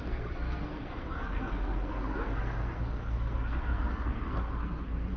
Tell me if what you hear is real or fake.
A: fake